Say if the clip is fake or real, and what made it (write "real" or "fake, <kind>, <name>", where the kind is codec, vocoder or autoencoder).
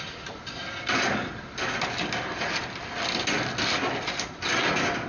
real